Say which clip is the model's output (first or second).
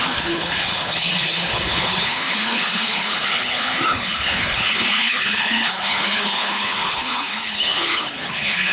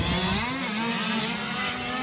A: first